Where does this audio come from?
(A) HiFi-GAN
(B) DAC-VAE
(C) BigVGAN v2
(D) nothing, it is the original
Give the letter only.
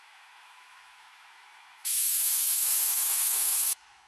B